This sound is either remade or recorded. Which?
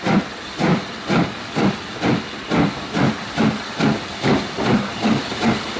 recorded